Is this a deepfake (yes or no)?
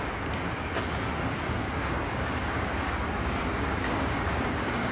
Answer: yes